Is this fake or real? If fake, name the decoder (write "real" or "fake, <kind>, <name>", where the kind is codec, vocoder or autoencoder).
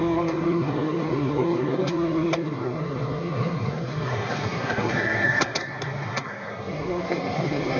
fake, codec, SNAC